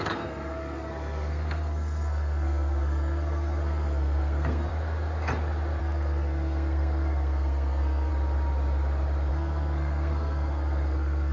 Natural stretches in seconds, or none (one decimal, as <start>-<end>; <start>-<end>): 4.7-5.8; 8.1-9.3